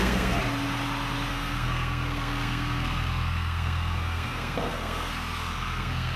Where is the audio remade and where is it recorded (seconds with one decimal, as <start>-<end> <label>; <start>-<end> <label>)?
0.0-0.4 remade; 0.4-1.3 recorded; 1.3-6.2 remade